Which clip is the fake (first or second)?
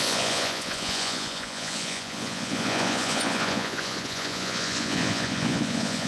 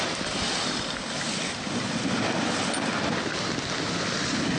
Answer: first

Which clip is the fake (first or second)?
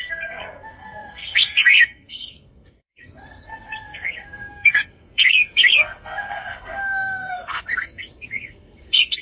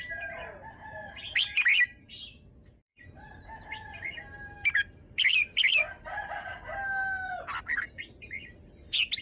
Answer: first